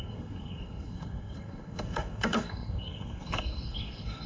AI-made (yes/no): yes